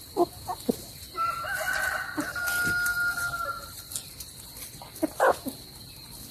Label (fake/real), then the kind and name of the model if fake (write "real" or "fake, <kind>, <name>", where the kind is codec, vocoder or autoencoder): real